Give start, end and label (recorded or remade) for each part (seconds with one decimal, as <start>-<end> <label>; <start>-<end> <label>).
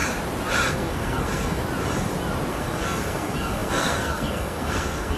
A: 0.0-0.7 recorded; 0.7-1.6 remade; 1.6-2.5 recorded; 2.5-5.2 remade